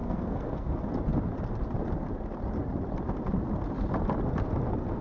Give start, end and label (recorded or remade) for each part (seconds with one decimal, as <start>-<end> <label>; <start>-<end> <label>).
0.0-0.7 remade; 0.7-5.0 recorded

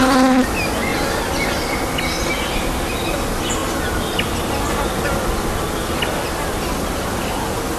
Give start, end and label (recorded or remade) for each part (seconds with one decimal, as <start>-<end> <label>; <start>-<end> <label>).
0.0-7.8 recorded

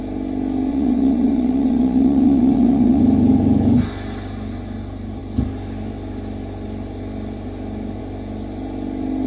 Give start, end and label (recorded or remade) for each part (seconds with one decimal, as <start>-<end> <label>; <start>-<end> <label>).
0.0-0.7 recorded; 0.7-3.0 remade; 3.0-9.3 recorded

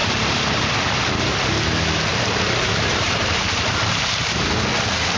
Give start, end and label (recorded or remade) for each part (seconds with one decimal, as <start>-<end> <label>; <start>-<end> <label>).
0.0-0.6 remade; 0.6-2.1 recorded; 2.1-4.4 remade; 4.4-5.2 recorded

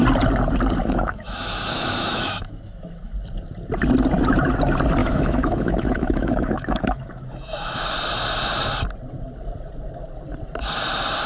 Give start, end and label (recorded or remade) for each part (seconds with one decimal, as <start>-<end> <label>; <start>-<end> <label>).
0.0-0.8 recorded; 0.8-3.1 remade; 3.1-5.0 recorded; 5.0-7.8 remade; 7.8-11.3 recorded